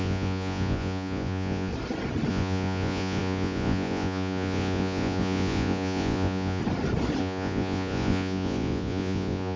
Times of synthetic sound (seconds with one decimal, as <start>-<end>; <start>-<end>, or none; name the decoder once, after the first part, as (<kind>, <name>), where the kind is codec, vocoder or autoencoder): 0.0-1.7 (vocoder, Vocos); 2.3-6.6; 7.2-9.6